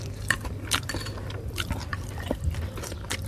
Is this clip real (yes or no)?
yes